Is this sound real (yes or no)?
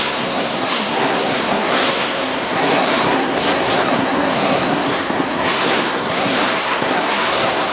no